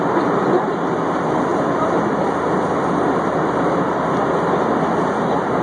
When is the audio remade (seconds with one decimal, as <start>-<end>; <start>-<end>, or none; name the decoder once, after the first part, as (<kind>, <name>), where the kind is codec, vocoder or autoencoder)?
none